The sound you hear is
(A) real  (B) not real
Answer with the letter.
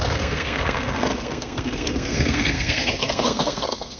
B